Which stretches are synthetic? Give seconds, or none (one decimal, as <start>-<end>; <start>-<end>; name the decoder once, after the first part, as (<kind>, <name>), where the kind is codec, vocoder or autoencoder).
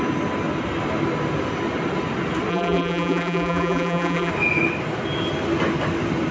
2.5-4.3 (vocoder, BigVGAN v2)